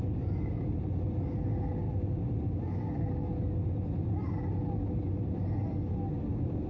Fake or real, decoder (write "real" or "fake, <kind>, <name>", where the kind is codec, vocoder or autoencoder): real